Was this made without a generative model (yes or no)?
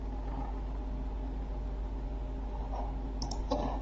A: yes